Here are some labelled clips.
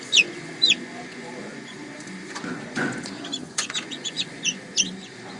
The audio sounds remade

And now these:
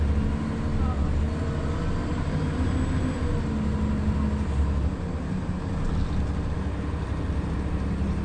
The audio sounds recorded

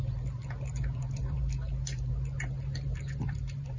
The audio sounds remade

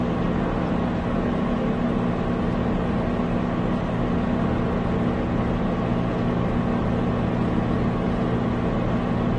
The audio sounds recorded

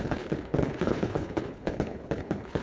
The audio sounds remade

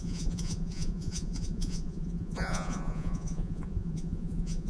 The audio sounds remade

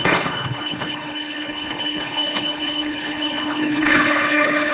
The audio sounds remade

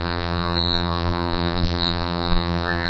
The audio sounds remade